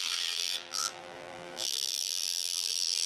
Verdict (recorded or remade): remade